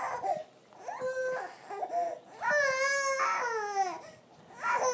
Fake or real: real